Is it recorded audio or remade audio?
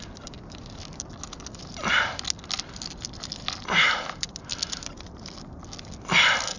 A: recorded